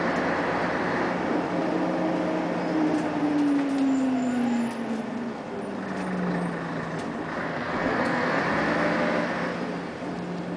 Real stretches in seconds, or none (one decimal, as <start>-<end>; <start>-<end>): 0.0-7.4; 8.4-10.6